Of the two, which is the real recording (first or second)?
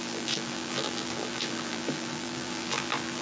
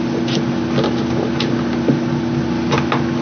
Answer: second